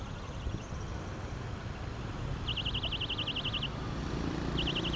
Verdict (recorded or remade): recorded